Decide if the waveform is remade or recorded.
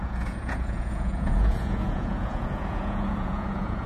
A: remade